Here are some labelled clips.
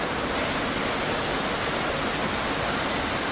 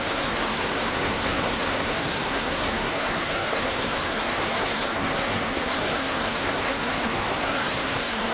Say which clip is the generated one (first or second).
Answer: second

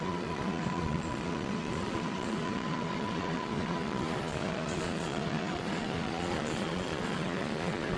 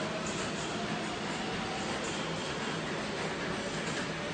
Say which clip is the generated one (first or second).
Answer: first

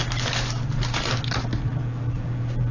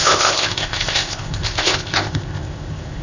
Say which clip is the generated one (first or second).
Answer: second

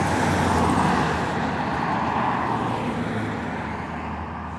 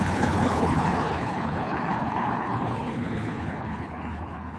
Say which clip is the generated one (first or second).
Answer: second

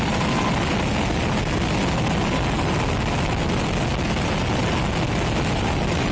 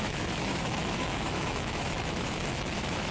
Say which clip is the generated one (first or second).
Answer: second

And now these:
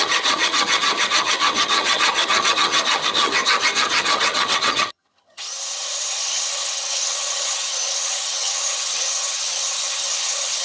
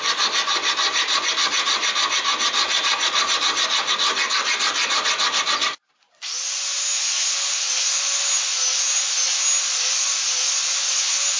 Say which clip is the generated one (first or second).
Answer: first